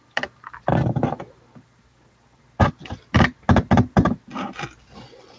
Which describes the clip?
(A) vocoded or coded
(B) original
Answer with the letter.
B